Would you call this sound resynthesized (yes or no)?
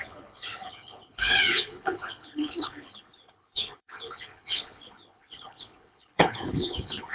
yes